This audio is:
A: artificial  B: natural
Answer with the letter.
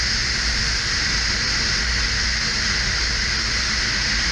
B